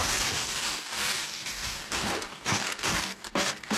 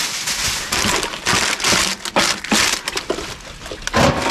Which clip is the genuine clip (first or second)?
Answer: second